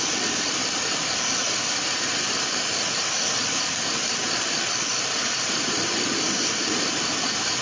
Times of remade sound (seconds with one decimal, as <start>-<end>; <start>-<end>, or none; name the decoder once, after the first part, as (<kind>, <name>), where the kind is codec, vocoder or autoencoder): 0.0-0.6 (vocoder, BigVGAN v2); 3.0-4.2; 4.9-7.6